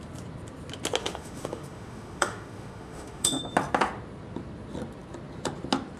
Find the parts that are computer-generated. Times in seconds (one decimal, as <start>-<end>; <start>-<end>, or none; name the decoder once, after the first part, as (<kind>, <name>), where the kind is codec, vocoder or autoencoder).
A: 1.0-3.4 (autoencoder, DAC-VAE)